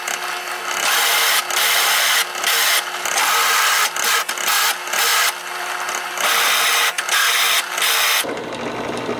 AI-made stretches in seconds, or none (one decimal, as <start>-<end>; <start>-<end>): none